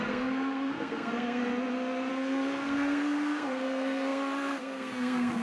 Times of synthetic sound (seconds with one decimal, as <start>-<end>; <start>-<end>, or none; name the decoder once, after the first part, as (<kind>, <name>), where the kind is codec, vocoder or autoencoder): 0.0-1.4 (codec, SNAC); 2.1-5.4